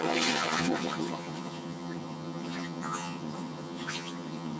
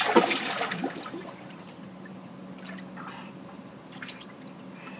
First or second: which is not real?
first